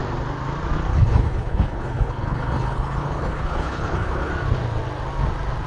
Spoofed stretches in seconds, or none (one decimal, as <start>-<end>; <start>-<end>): 0.9-4.3